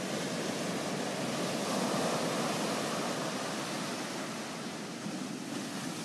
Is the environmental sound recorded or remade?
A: recorded